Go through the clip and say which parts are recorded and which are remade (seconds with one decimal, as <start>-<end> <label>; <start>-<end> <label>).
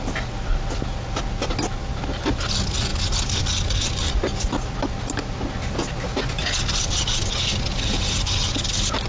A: 0.0-9.1 recorded